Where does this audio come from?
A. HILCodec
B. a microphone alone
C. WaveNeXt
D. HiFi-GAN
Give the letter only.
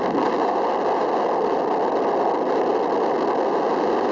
B